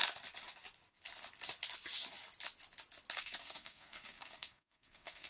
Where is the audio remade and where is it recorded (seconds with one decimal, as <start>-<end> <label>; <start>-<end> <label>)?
0.0-3.2 recorded; 3.2-5.3 remade